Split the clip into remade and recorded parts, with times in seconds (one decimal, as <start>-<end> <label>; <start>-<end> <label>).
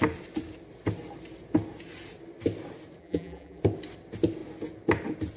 0.0-3.0 recorded; 3.0-3.6 remade; 3.6-5.4 recorded